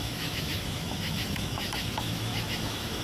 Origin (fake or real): fake